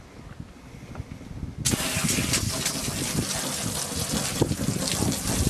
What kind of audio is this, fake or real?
real